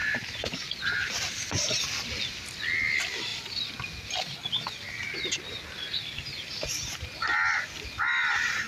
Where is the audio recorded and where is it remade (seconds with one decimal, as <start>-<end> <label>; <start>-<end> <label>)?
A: 0.0-1.8 remade; 1.8-8.7 recorded